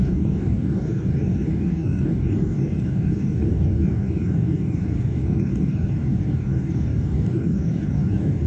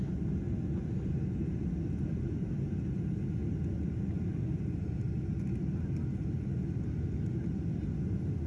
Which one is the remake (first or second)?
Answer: first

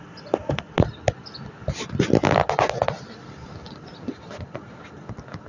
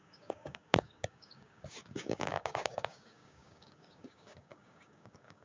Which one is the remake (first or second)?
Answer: second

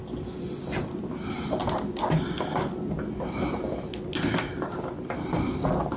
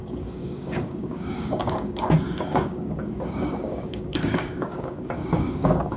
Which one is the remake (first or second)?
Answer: second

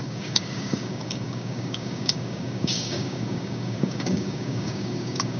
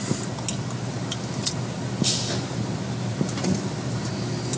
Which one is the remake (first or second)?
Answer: first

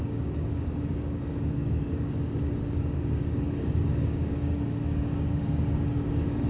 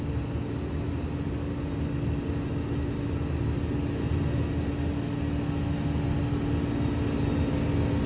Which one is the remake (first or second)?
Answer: first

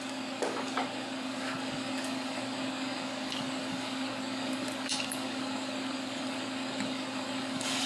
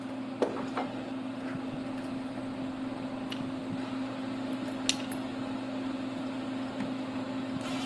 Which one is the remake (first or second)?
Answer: first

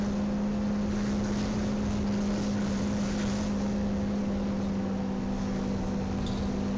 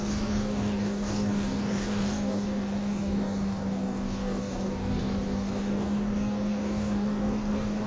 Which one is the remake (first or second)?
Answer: second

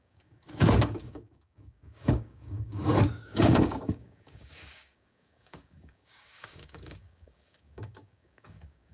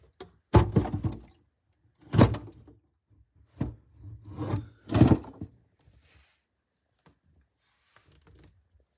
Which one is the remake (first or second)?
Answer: first